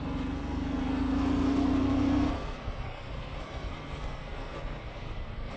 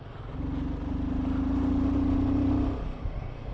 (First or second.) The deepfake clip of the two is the first